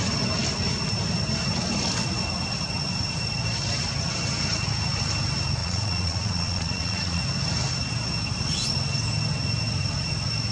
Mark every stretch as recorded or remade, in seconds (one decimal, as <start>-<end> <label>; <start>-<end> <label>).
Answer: 0.0-5.6 recorded; 5.6-7.2 remade; 7.2-10.5 recorded